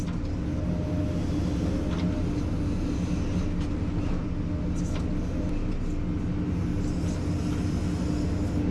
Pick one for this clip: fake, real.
real